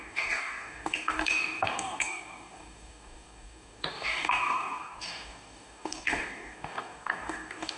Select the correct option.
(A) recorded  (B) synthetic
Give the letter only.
B